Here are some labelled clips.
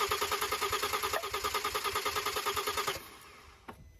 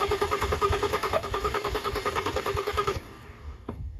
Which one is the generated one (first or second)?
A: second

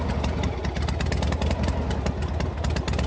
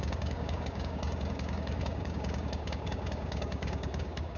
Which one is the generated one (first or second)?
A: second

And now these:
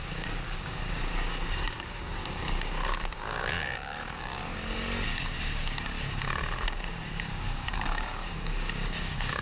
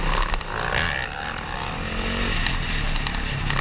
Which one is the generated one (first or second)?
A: first